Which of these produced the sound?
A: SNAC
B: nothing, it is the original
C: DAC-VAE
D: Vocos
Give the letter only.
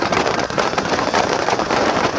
D